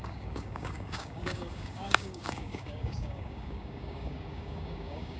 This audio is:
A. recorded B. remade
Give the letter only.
B